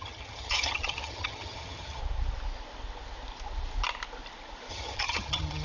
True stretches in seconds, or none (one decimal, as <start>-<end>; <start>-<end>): 2.0-4.7